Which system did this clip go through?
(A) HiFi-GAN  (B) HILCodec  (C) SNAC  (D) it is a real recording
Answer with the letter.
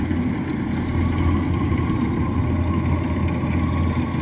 D